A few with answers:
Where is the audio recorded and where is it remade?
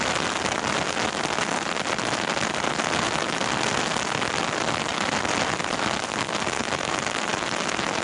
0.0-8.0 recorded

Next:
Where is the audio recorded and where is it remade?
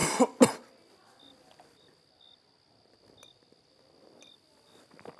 0.0-5.2 recorded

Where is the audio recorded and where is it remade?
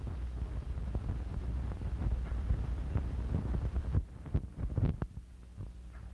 0.0-1.3 recorded; 1.3-5.0 remade; 5.0-6.1 recorded